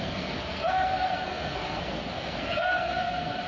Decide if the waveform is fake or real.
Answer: fake